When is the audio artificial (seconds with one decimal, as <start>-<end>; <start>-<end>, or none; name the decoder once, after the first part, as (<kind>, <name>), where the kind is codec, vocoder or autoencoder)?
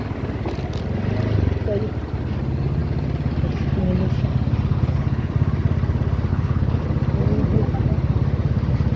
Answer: 4.7-5.3 (codec, HILCodec); 6.3-6.8